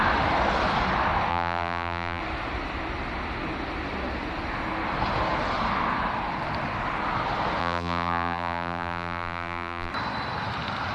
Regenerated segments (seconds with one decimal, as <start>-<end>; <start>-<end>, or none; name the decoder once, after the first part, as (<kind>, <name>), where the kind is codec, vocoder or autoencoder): 1.3-2.2 (vocoder, BigVGAN v2); 7.6-9.9